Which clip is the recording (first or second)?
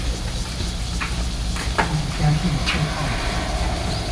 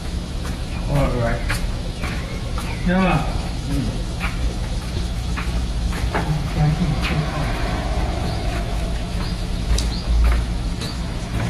first